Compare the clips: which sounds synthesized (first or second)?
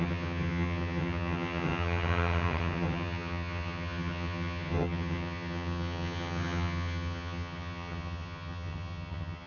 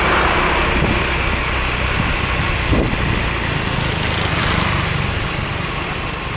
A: first